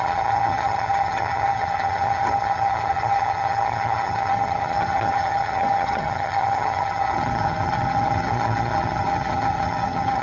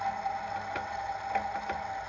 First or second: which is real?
second